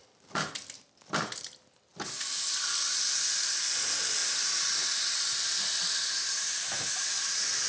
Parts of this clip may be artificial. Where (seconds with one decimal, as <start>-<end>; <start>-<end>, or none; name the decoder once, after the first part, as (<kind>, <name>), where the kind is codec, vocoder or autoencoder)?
none